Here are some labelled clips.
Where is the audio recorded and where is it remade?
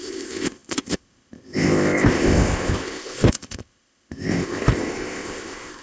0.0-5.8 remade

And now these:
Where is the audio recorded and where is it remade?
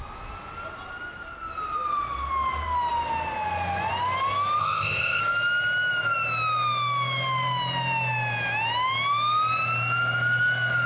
0.0-4.6 recorded; 4.6-5.2 remade; 5.2-10.9 recorded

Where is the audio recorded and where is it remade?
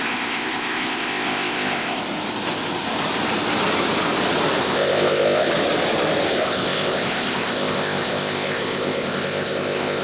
0.0-2.0 remade; 2.0-4.6 recorded; 4.6-5.5 remade; 5.5-6.3 recorded; 6.3-10.0 remade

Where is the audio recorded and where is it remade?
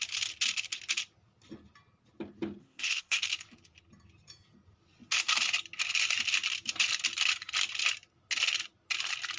0.0-2.6 recorded; 2.6-3.2 remade; 3.2-9.4 recorded